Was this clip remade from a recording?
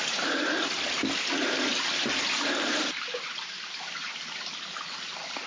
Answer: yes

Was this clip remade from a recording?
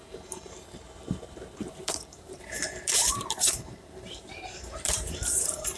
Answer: yes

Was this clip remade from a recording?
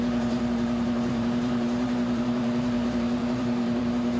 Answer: yes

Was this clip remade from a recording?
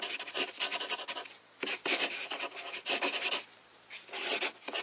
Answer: yes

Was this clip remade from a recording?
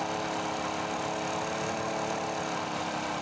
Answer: no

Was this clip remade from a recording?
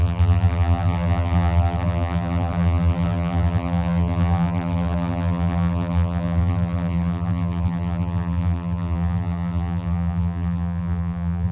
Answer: yes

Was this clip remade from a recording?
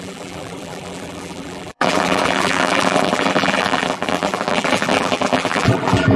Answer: yes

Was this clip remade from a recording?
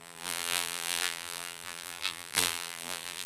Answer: yes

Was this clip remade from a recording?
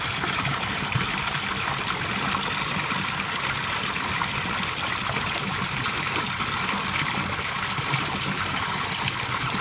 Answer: no